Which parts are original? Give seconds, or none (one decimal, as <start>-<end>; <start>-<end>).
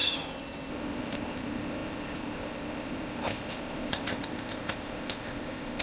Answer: 0.0-0.7